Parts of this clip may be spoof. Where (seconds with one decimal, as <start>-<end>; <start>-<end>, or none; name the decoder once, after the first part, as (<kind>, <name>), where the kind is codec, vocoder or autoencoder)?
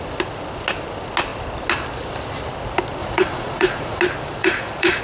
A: 3.0-4.0 (vocoder, Vocos); 4.4-5.0